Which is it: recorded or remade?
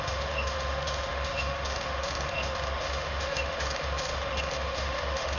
remade